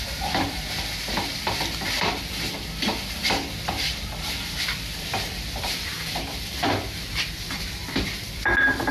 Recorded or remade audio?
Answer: remade